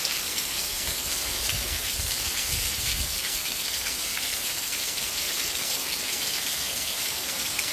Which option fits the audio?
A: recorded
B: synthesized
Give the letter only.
B